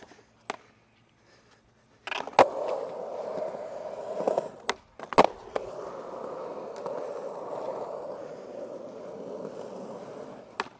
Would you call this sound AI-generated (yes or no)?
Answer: no